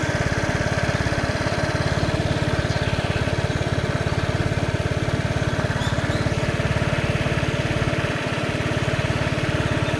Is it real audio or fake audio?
real